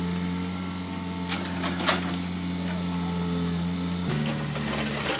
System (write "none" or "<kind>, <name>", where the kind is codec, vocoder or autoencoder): none